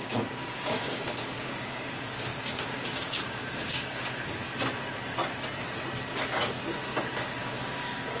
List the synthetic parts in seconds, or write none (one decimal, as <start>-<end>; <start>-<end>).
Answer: 0.0-4.4; 7.0-8.2